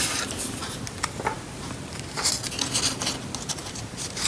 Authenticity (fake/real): real